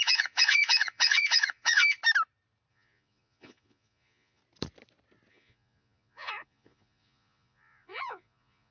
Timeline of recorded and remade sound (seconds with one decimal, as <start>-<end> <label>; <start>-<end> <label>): 0.0-2.0 remade; 2.0-2.7 recorded; 2.7-4.4 remade; 4.4-5.3 recorded; 5.3-8.7 remade

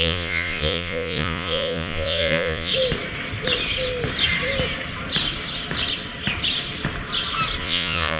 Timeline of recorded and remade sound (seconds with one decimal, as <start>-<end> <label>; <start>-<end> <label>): 0.0-2.7 remade; 2.7-7.6 recorded; 7.6-8.2 remade

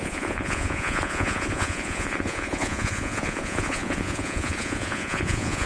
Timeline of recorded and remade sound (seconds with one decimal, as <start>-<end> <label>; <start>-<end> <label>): 0.0-5.7 remade

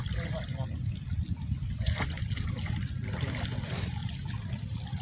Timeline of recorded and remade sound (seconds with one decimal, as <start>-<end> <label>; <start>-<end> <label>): 0.0-5.0 recorded

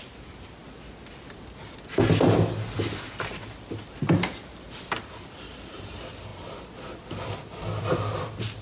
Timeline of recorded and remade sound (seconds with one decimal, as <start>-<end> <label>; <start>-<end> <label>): 0.0-8.6 recorded

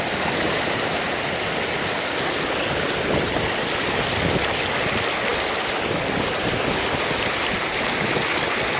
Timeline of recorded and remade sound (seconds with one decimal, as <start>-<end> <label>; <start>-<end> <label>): 0.0-8.8 recorded

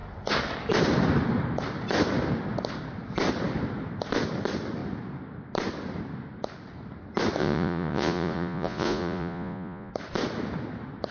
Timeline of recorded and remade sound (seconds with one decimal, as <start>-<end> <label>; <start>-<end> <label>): 0.0-7.4 recorded; 7.4-9.9 remade; 9.9-11.1 recorded